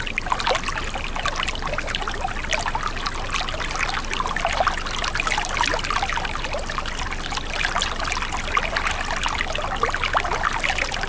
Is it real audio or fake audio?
real